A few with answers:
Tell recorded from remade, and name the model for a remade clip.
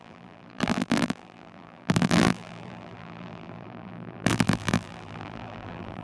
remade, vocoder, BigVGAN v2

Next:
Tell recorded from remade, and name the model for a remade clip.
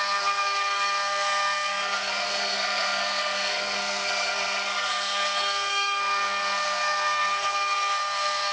remade, codec, SNAC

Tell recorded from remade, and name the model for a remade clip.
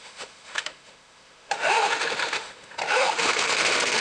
remade, autoencoder, DAC-VAE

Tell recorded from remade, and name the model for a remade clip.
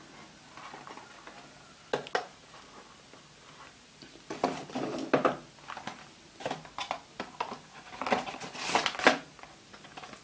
recorded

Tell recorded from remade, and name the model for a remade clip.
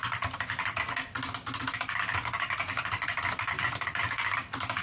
recorded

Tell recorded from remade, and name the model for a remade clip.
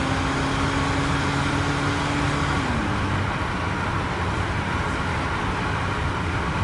recorded